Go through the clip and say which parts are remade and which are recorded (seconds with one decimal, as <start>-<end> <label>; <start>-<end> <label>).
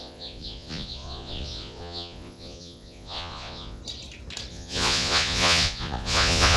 0.0-3.8 remade; 3.8-4.5 recorded; 4.5-6.6 remade